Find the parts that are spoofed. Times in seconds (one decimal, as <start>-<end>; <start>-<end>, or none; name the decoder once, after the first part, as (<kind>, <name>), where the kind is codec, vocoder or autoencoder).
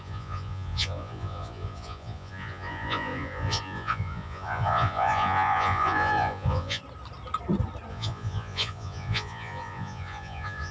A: 0.0-6.8 (vocoder, Vocos); 7.9-10.7